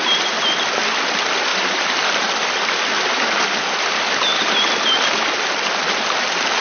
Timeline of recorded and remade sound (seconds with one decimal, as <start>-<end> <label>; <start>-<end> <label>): 0.0-6.6 recorded